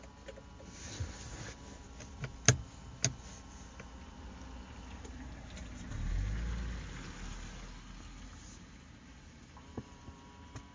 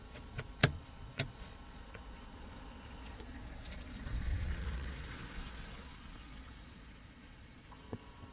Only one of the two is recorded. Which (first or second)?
first